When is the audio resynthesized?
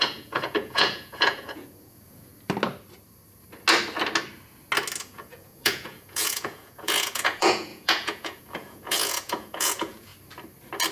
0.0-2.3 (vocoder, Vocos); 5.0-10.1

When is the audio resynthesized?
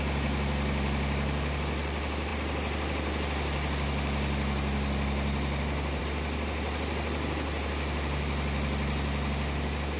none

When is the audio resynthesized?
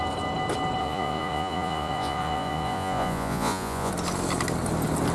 0.8-3.9 (vocoder, Vocos)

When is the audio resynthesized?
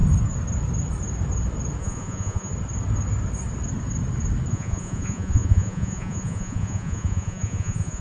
1.8-2.5 (vocoder, Vocos); 4.5-8.0